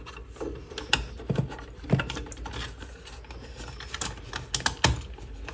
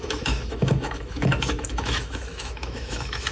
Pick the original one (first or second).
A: first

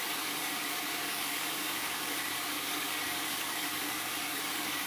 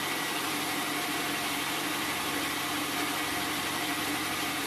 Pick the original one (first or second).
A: second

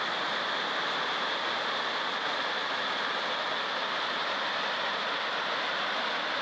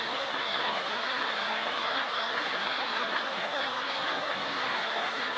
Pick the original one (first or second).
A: first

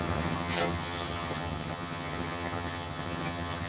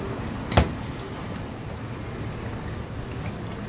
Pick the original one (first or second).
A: second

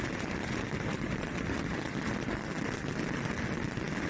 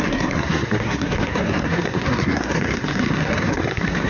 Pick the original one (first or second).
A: first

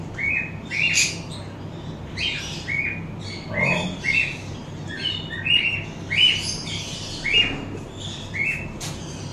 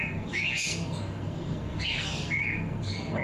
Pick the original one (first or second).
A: first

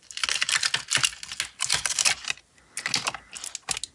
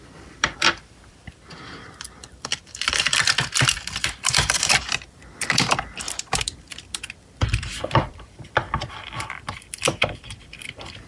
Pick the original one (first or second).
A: first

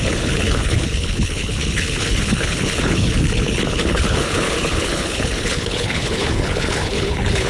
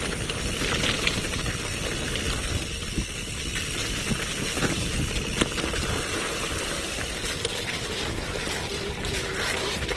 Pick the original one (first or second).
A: second